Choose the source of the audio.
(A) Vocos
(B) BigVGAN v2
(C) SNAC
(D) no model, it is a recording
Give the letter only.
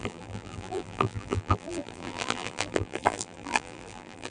B